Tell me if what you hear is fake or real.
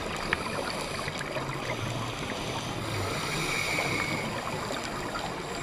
real